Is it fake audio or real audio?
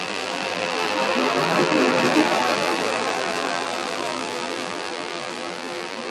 fake